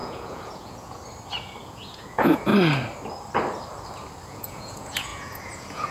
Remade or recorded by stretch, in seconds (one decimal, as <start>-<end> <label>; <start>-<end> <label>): 0.0-1.0 remade; 1.0-1.6 recorded; 1.6-2.5 remade; 2.5-4.3 recorded; 4.3-5.9 remade